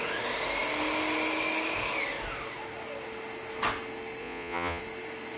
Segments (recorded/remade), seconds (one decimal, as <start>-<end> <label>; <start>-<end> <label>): 0.0-4.2 recorded; 4.2-4.8 remade; 4.8-5.4 recorded